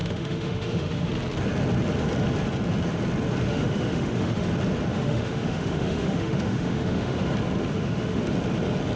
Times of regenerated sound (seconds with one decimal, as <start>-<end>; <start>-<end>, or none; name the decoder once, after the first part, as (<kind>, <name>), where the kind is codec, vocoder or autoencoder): 0.0-1.1 (autoencoder, DAC-VAE); 3.5-4.5; 4.9-7.3; 7.7-8.2